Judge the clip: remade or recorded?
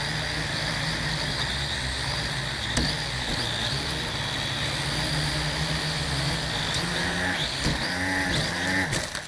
recorded